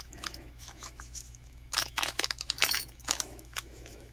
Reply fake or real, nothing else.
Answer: fake